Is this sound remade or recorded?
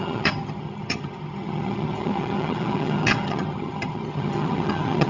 remade